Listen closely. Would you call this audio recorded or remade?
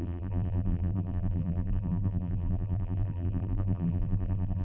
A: remade